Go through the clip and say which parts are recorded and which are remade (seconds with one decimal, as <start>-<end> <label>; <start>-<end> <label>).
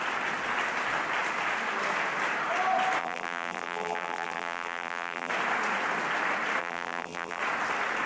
0.0-3.0 recorded; 3.0-5.3 remade; 5.3-6.6 recorded; 6.6-7.4 remade; 7.4-8.1 recorded